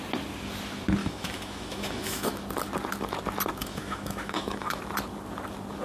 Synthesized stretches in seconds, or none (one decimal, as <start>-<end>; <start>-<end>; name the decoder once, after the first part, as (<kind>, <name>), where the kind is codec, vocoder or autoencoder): 1.0-2.4 (autoencoder, DAC-VAE); 3.6-4.8

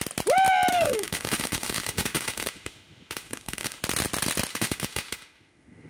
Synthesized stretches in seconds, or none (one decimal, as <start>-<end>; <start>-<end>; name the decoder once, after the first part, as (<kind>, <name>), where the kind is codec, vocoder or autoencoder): 0.7-3.8 (autoencoder, DAC-VAE); 4.5-5.9

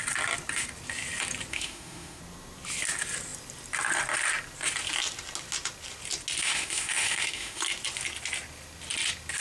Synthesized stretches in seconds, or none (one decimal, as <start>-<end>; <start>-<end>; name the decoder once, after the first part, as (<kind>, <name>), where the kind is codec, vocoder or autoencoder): 1.5-2.2 (autoencoder, DAC-VAE); 6.4-7.6

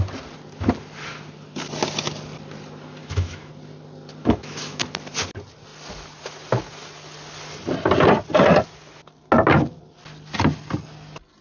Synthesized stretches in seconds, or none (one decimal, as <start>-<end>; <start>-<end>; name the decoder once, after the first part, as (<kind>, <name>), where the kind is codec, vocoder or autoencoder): 3.0-3.5 (autoencoder, DAC-VAE); 4.2-4.8

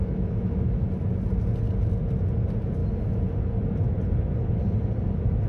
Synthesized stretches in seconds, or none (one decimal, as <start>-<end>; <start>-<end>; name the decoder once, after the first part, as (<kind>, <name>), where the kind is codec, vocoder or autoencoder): 0.0-0.9 (autoencoder, DAC-VAE)

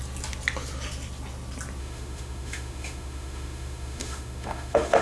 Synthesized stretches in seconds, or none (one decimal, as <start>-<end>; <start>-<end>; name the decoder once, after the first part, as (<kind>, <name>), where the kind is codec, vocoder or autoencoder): 1.8-5.0 (autoencoder, DAC-VAE)

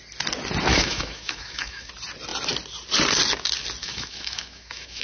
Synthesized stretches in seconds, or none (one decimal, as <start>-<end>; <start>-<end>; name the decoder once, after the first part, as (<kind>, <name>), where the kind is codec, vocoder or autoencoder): 0.7-1.9 (autoencoder, DAC-VAE); 3.8-5.0